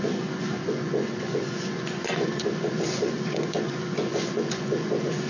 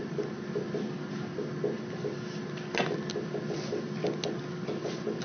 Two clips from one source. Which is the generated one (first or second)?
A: first